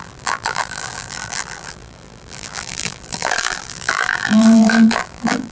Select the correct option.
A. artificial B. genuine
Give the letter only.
A